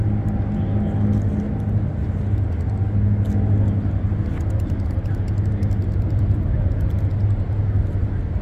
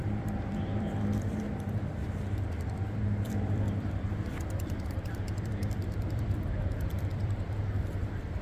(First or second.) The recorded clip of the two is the first